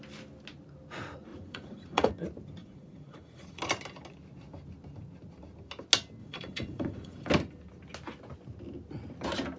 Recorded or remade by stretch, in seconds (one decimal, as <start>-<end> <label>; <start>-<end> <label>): 0.0-1.3 recorded; 1.3-2.1 remade; 2.1-2.6 recorded; 2.6-3.6 remade; 3.6-6.2 recorded; 6.2-7.3 remade; 7.3-9.6 recorded